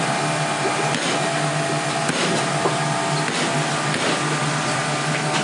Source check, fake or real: real